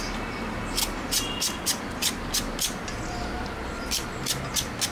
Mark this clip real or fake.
real